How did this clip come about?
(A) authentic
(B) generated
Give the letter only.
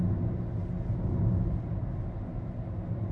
A